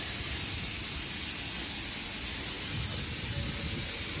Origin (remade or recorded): recorded